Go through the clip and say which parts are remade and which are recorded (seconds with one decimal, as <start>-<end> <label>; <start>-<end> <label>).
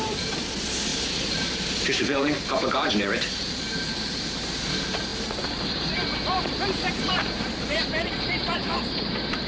0.0-9.5 remade